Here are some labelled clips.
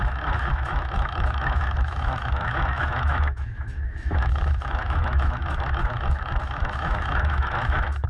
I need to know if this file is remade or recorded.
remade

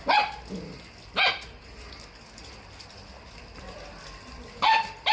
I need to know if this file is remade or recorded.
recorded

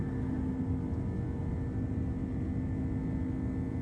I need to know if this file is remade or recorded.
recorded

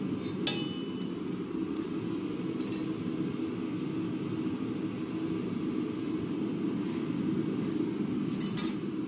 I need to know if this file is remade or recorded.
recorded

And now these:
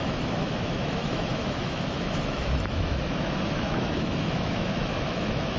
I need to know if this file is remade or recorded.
remade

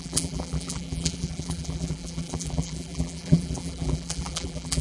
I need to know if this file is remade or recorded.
remade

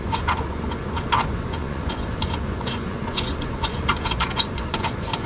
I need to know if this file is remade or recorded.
remade